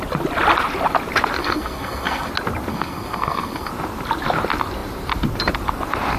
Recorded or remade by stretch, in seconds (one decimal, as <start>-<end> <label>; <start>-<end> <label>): 0.0-1.4 recorded; 1.4-2.3 remade; 2.3-2.7 recorded; 2.7-3.7 remade; 3.7-6.2 recorded